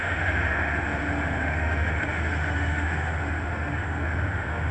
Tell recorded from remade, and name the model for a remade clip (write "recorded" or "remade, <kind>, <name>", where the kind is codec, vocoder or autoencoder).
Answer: remade, autoencoder, DAC-VAE